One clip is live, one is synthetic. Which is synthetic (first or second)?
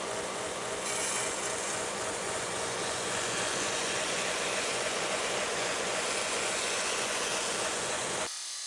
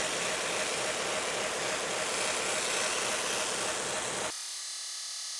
first